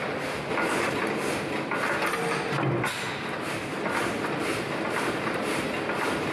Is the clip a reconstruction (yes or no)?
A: no